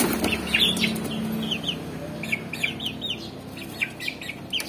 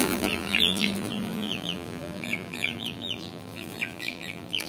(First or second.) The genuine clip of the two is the first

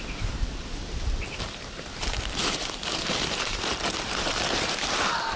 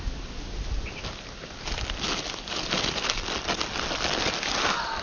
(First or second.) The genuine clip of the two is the second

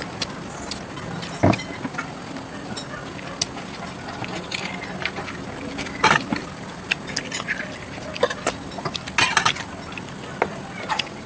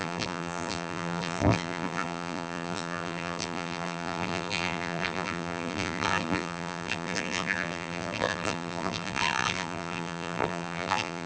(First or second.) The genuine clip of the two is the first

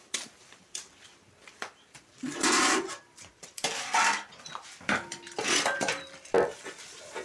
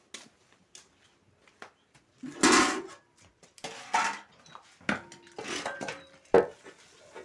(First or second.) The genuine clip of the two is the second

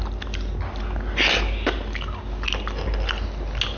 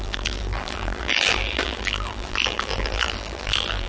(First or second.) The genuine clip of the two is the first